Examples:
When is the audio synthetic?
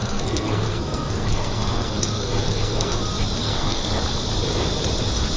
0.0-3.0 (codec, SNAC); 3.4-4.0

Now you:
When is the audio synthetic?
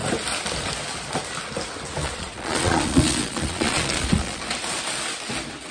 2.0-4.4 (vocoder, Vocos)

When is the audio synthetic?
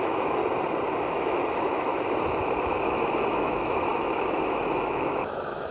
0.0-0.4 (autoencoder, DAC-VAE); 1.0-1.9; 2.8-5.7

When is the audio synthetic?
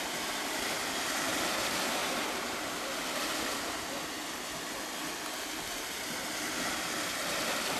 none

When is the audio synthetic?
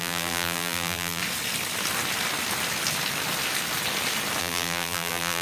0.0-1.2 (vocoder, BigVGAN v2); 4.4-5.4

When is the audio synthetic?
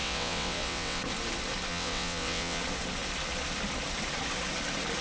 0.0-1.0 (vocoder, WaveNeXt); 1.7-2.6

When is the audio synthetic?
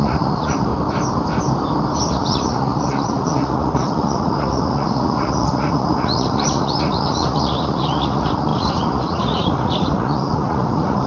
0.0-0.7 (vocoder, Vocos); 2.1-11.1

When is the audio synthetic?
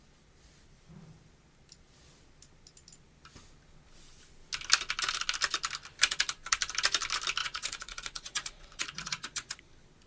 7.4-9.6 (vocoder, Vocos)